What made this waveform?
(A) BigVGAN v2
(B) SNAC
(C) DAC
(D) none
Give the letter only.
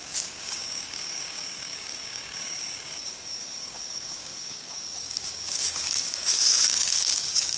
C